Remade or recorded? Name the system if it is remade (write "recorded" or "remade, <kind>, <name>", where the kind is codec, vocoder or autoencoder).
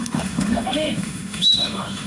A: remade, autoencoder, DAC-VAE